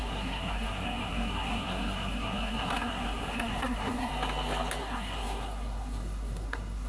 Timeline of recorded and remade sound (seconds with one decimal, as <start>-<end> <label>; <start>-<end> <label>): 0.0-4.1 remade; 4.1-4.8 recorded; 4.8-6.9 remade